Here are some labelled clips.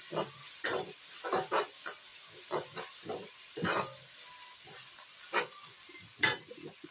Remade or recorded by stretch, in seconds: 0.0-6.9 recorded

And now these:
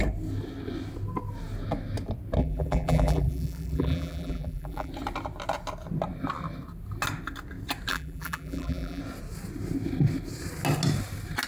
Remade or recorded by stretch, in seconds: 0.0-2.4 recorded; 2.4-4.9 remade; 4.9-7.9 recorded; 7.9-9.0 remade; 9.0-11.5 recorded

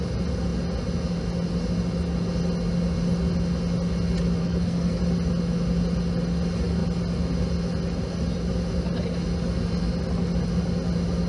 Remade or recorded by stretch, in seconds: 0.0-4.4 recorded; 4.4-5.0 remade; 5.0-11.3 recorded